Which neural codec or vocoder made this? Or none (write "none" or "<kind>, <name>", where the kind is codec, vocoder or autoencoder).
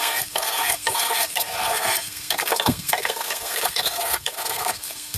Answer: codec, SNAC